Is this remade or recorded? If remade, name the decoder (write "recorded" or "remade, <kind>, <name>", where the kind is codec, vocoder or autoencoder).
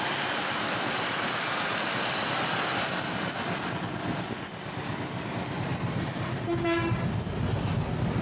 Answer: recorded